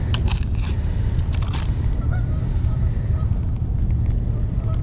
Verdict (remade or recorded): recorded